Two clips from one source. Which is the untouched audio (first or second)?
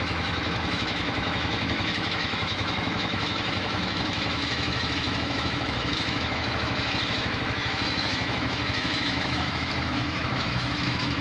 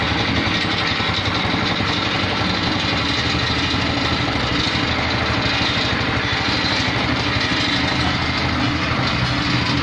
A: second